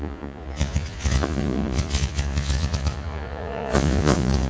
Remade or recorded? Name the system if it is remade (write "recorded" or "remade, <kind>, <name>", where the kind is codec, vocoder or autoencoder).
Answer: remade, vocoder, Vocos